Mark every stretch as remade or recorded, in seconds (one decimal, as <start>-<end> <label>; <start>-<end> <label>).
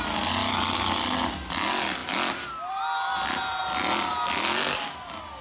0.0-5.4 recorded